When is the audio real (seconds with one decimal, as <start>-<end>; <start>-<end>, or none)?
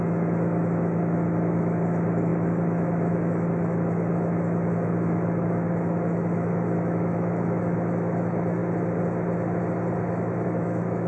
8.6-10.1